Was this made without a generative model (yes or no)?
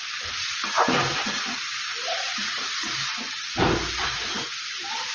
no